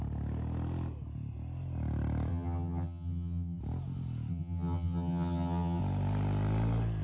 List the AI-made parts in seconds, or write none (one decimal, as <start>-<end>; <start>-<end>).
2.3-3.6; 4.3-5.8